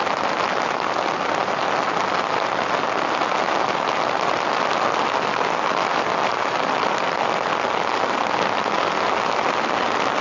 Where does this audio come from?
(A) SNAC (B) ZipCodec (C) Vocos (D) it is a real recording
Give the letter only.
D